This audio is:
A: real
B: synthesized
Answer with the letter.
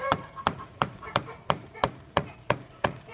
B